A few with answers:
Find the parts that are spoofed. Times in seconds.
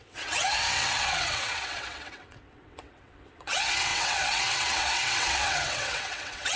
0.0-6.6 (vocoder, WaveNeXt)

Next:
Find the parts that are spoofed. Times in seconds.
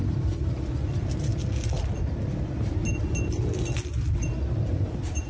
0.0-1.3 (vocoder, BigVGAN v2); 4.5-5.3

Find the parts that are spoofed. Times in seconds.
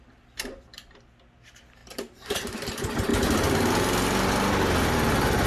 1.8-2.7 (vocoder, BigVGAN v2)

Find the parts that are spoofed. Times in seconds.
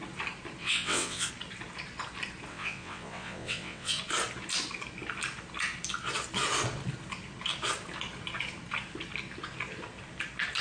0.6-1.3 (vocoder, WaveNeXt); 2.5-4.0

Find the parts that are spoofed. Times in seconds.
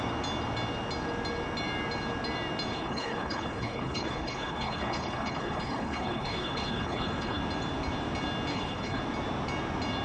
2.7-7.4 (codec, HILCodec); 8.5-9.0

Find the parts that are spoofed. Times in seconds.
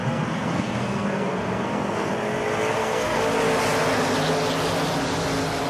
0.0-2.1 (codec, SNAC); 2.7-3.2